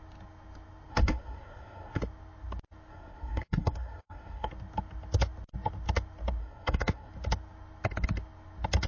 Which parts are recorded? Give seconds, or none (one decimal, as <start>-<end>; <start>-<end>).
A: 0.0-0.9; 2.0-2.9; 4.5-6.4; 7.1-8.9